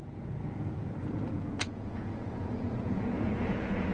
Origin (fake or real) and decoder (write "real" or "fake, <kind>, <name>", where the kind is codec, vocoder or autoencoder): fake, vocoder, Vocos